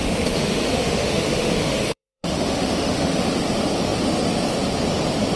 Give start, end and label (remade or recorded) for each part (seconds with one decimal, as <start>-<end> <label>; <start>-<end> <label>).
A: 0.0-3.2 remade; 3.2-5.4 recorded